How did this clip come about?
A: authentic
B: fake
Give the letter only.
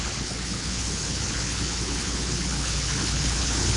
B